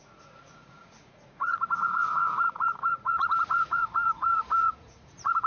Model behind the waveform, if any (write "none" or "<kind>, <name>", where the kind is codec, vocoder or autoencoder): vocoder, Vocos